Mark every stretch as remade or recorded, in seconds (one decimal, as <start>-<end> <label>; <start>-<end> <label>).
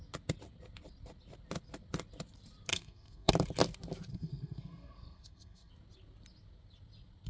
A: 0.0-2.7 recorded; 2.7-3.3 remade; 3.3-4.1 recorded; 4.1-5.7 remade; 5.7-7.3 recorded